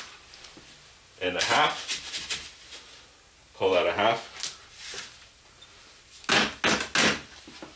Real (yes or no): yes